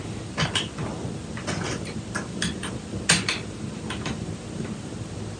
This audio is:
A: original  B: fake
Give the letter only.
A